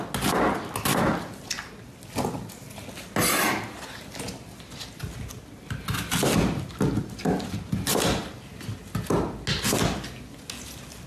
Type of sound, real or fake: real